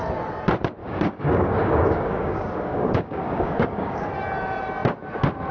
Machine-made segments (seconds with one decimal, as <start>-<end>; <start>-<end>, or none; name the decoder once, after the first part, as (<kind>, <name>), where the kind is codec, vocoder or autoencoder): 0.8-4.1 (codec, DAC)

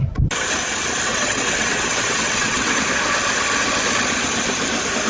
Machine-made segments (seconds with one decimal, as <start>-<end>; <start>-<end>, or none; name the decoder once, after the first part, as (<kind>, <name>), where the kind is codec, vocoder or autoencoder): 1.1-2.7 (vocoder, WaveNeXt)

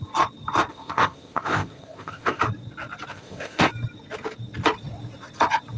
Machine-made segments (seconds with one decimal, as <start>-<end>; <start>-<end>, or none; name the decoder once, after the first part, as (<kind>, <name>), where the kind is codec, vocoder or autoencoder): 0.7-2.4 (codec, ZipCodec); 3.1-3.7

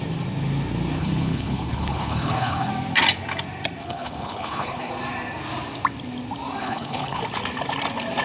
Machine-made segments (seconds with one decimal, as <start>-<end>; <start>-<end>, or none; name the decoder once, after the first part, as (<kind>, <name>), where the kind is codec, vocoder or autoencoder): 1.0-2.7 (codec, HILCodec); 3.8-4.9; 6.6-7.2

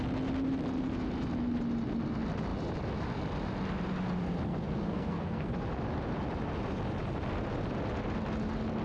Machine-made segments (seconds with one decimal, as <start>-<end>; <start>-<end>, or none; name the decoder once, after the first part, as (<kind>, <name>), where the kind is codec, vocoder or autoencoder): 4.5-5.5 (codec, SNAC)